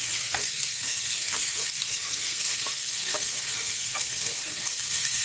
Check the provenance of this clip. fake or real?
fake